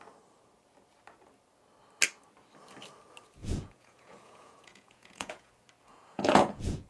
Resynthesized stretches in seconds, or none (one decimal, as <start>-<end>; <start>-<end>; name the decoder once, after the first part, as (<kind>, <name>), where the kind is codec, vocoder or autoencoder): 3.4-5.5 (vocoder, Vocos); 5.9-6.9

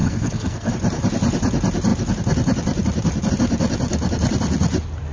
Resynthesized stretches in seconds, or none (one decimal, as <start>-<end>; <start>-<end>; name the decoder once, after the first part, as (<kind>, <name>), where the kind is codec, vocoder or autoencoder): 0.0-0.7 (codec, SNAC)